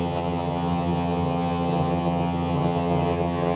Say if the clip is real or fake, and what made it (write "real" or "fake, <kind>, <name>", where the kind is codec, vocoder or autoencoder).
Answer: fake, vocoder, HiFi-GAN